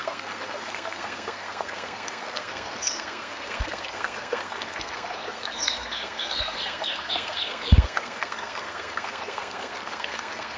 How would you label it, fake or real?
fake